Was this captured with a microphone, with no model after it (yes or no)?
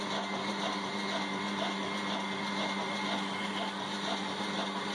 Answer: yes